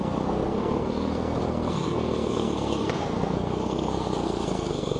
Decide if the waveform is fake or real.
fake